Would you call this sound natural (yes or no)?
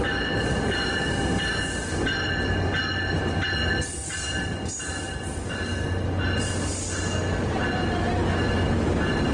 yes